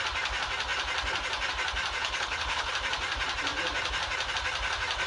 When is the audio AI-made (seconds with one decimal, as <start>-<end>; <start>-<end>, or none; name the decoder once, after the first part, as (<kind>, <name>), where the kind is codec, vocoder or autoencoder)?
2.0-2.7 (codec, HILCodec)